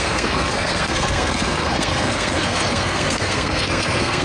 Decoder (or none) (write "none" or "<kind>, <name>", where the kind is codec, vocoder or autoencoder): codec, SNAC